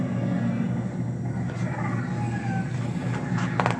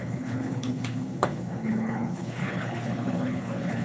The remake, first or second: second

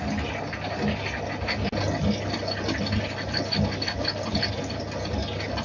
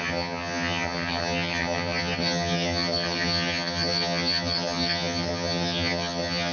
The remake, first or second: second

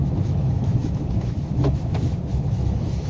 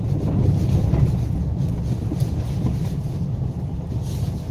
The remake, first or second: first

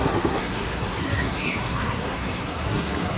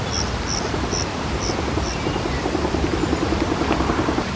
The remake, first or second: first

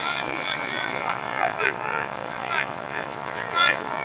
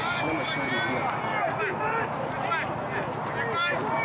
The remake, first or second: first